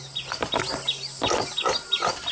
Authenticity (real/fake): real